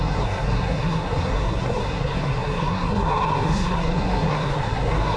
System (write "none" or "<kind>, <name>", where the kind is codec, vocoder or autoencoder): codec, SNAC